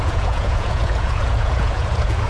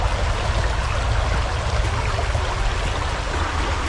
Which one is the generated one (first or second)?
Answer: first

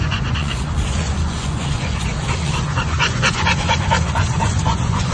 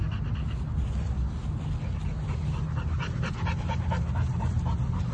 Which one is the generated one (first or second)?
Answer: first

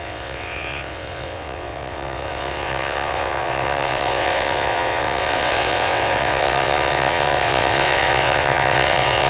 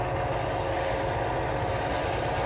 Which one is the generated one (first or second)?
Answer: first